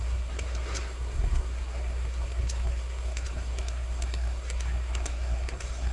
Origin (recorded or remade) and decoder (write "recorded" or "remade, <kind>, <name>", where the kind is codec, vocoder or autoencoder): remade, codec, SNAC